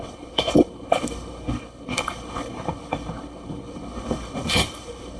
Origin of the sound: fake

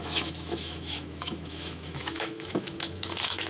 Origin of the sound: fake